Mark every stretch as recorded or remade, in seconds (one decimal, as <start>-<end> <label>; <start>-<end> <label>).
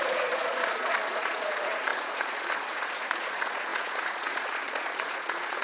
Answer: 0.0-5.6 remade